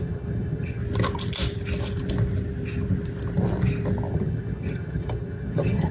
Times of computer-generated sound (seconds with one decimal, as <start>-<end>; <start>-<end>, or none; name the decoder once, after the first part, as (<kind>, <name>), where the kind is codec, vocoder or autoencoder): 0.0-0.8 (vocoder, HiFi-GAN); 4.1-5.9